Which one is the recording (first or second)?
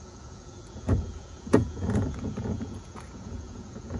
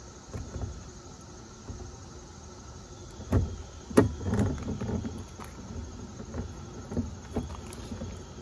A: second